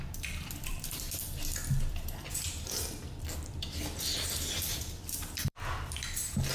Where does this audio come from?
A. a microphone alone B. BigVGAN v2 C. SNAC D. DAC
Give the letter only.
B